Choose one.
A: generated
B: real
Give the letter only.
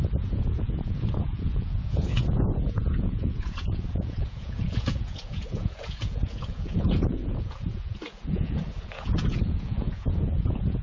A